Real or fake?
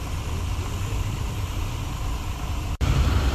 fake